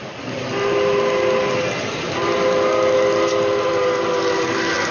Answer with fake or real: real